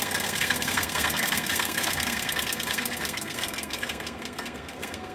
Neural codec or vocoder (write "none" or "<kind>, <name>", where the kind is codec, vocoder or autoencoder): codec, SNAC